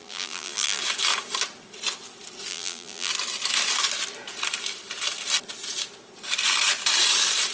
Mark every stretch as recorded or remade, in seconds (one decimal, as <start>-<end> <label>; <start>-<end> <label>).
0.0-0.8 remade; 0.8-2.5 recorded; 2.5-3.1 remade; 3.1-7.5 recorded